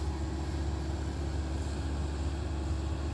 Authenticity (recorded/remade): recorded